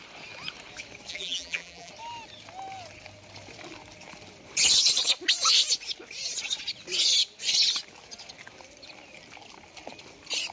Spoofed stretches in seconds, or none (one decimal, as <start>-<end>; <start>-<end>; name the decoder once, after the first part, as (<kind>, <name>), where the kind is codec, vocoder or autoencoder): 1.1-1.9 (vocoder, BigVGAN v2)